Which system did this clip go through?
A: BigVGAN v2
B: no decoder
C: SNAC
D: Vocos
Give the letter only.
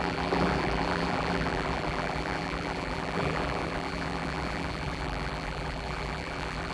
A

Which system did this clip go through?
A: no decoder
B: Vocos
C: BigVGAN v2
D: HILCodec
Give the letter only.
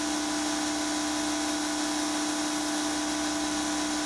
A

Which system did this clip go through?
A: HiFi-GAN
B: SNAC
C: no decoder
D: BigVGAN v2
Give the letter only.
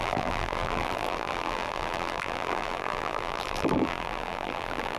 D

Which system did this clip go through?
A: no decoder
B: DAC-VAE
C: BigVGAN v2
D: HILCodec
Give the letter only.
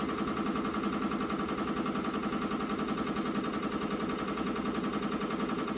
A